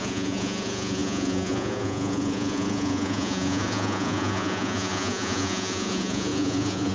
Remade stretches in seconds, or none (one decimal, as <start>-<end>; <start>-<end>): 0.0-6.9